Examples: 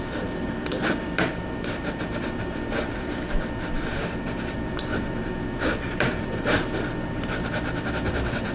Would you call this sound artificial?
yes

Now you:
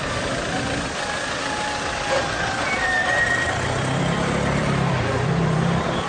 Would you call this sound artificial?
yes